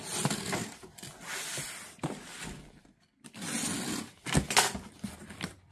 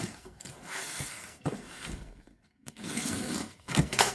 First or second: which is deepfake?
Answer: second